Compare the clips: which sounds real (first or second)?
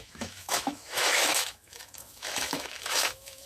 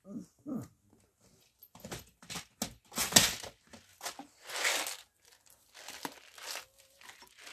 second